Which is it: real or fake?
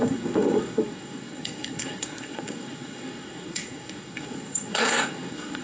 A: fake